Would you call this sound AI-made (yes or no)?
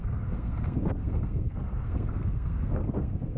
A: yes